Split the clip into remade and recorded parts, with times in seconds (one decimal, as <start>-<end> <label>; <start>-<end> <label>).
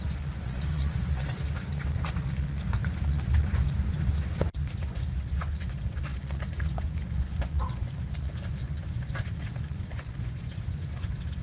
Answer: 0.0-11.4 remade